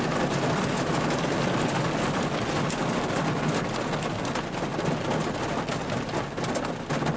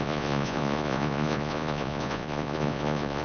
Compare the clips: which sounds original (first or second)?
first